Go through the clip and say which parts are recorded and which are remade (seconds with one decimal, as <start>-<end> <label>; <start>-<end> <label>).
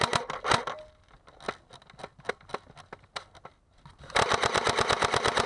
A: 0.0-5.5 recorded